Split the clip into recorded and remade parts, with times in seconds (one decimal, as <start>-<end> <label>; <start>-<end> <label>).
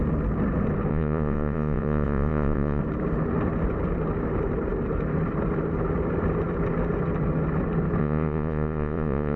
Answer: 0.0-0.9 recorded; 0.9-2.8 remade; 2.8-8.0 recorded; 8.0-9.4 remade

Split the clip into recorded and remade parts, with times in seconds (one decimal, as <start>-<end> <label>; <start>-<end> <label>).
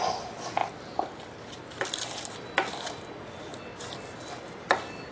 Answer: 0.0-5.1 recorded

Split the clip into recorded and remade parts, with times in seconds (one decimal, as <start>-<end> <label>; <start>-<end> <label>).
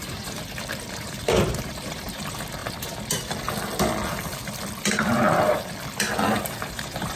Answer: 0.0-2.6 remade; 2.6-6.7 recorded; 6.7-7.2 remade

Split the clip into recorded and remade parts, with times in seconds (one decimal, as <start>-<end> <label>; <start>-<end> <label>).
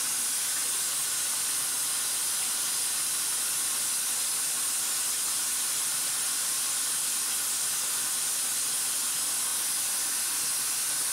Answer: 0.0-11.1 recorded